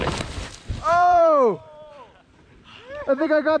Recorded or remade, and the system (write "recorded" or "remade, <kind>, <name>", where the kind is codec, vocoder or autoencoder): remade, vocoder, BigVGAN v2